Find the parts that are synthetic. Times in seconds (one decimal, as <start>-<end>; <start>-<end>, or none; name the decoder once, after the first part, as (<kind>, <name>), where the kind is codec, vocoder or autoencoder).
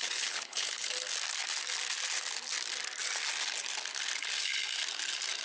0.0-0.9 (codec, HILCodec)